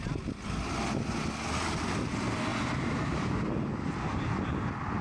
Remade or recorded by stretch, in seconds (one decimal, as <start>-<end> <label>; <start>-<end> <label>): 0.0-5.0 recorded